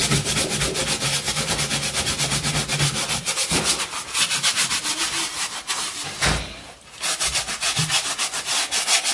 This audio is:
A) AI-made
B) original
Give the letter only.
B